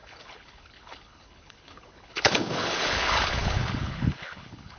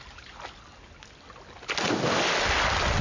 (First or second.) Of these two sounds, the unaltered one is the second